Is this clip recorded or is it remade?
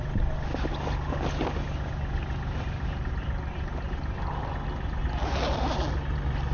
recorded